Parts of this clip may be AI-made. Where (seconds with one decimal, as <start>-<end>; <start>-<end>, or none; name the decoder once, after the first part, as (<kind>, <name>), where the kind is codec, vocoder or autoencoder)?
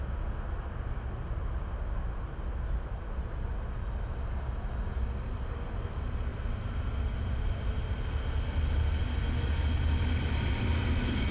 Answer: 6.3-6.9 (vocoder, BigVGAN v2)